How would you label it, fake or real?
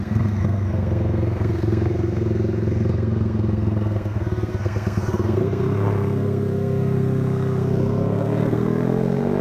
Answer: fake